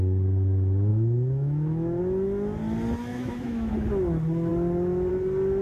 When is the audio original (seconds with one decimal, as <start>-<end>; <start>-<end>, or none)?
0.0-0.9; 2.0-3.1; 3.7-5.6